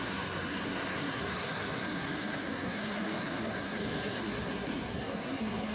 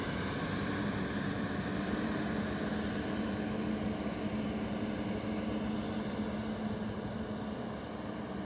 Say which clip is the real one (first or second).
second